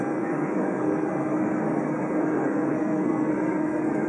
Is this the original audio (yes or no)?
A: no